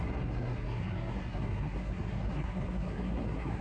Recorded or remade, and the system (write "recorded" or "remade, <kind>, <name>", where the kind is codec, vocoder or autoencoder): remade, codec, SNAC